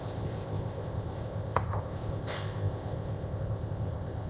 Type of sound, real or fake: fake